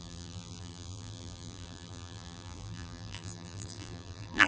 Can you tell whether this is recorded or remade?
remade